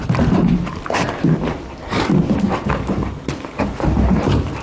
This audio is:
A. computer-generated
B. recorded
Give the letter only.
A